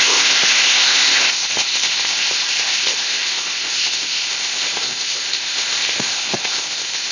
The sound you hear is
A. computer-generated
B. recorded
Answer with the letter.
A